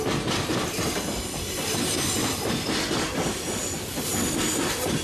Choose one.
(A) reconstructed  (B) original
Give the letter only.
B